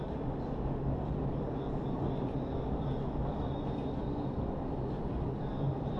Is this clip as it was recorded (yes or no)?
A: yes